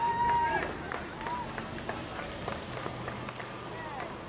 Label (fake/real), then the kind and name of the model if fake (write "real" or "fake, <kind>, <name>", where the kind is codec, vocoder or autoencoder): real